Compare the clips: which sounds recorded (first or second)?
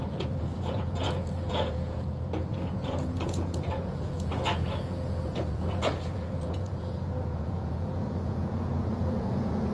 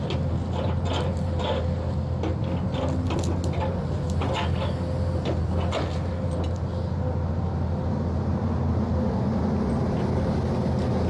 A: second